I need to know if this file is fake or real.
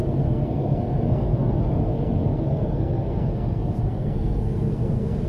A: fake